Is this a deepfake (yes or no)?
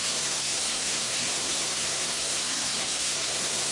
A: yes